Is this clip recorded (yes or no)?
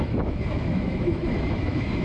no